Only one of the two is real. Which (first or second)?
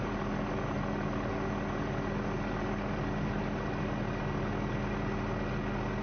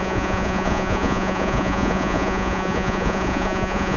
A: first